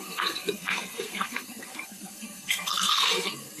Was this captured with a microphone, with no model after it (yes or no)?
no